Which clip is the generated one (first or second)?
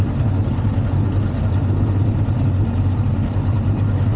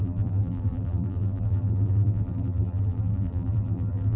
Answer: second